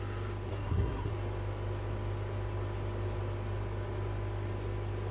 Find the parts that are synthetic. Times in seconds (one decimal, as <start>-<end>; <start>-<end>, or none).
0.5-1.1